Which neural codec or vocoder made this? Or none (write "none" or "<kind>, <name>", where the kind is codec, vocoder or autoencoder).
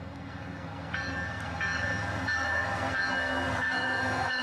codec, SNAC